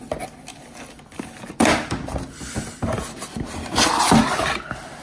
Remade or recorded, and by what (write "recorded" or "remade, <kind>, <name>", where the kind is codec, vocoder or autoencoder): recorded